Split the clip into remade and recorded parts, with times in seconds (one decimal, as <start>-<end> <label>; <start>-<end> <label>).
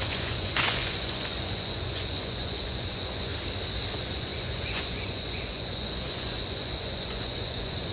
0.0-3.3 remade; 3.3-3.9 recorded; 3.9-7.9 remade